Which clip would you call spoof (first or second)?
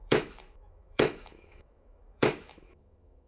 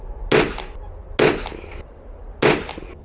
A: first